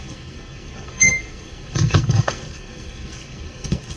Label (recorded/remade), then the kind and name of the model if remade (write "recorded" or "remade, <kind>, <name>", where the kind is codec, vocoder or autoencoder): remade, codec, SNAC